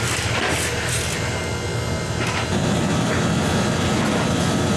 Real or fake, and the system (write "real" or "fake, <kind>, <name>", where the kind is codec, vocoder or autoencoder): real